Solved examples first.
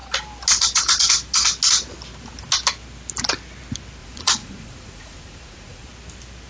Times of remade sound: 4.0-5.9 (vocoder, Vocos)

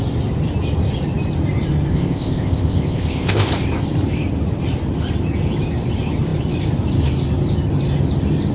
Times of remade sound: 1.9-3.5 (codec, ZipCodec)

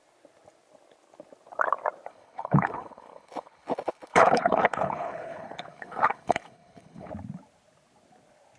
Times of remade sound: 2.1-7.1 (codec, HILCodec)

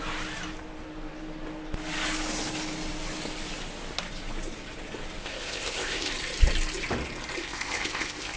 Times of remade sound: 5.2-6.1 (codec, ZipCodec); 7.4-8.4

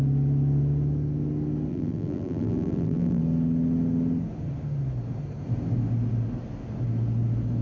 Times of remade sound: 1.7-3.2 (vocoder, BigVGAN v2)